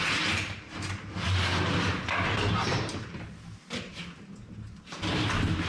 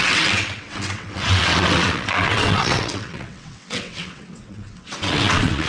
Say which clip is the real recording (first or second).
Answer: first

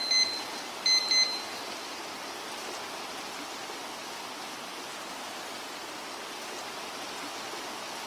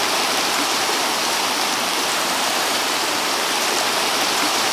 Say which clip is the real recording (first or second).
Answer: first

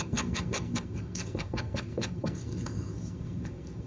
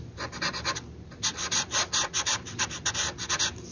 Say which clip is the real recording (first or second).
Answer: second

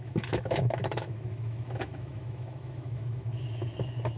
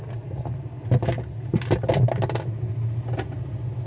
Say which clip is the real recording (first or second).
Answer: second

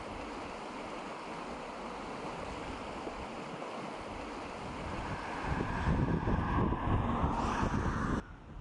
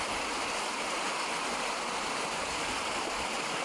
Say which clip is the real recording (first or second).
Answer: first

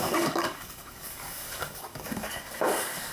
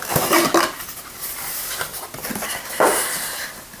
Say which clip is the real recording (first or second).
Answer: second